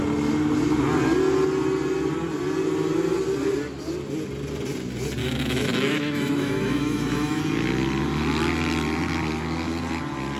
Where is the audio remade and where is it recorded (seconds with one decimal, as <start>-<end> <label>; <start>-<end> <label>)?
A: 0.0-5.2 recorded; 5.2-7.4 remade; 7.4-10.4 recorded